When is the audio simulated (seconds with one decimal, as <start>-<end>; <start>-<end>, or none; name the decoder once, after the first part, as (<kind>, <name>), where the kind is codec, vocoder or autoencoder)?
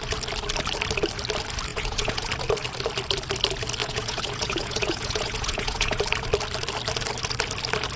1.7-2.3 (vocoder, Vocos); 3.8-6.0